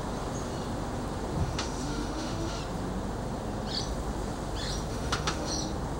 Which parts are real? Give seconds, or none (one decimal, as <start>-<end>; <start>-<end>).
0.0-1.4; 2.6-4.9; 5.5-6.0